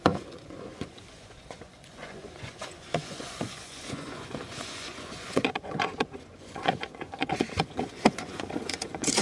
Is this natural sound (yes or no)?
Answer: no